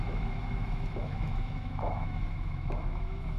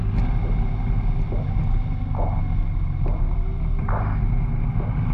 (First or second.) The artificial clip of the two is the first